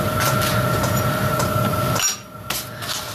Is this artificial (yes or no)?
no